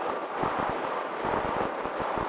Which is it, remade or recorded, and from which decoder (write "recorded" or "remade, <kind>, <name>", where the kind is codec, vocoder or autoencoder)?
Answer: recorded